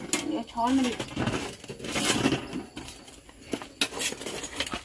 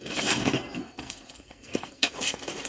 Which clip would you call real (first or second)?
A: first